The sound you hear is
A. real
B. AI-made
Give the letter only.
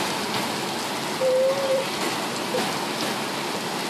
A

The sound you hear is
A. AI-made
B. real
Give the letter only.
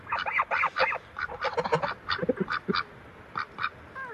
B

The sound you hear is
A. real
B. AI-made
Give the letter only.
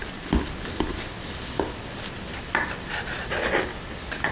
B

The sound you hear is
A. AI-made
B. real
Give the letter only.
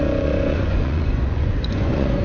A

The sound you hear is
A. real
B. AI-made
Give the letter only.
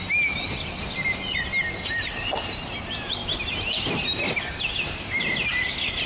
A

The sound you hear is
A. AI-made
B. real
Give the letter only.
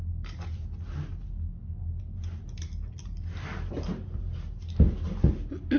B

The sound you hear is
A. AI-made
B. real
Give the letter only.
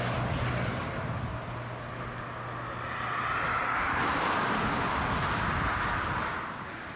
B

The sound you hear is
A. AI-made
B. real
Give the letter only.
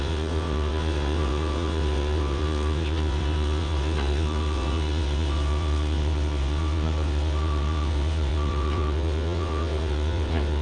A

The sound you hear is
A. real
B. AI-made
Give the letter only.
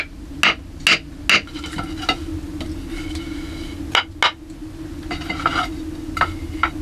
A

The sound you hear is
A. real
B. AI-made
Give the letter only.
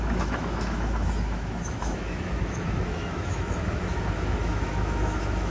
B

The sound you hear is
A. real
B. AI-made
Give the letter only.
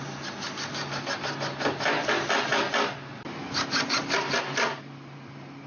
A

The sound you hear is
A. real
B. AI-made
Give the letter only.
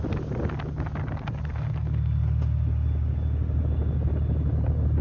A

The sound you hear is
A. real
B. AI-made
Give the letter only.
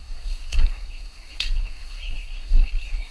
B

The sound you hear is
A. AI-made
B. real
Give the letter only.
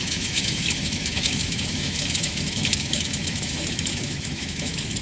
A